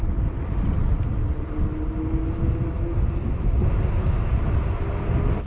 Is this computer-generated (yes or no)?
no